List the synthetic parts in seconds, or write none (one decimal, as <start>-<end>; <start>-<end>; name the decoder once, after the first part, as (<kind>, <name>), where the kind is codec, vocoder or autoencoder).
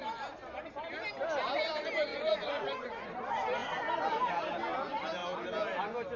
2.1-3.1 (vocoder, Vocos)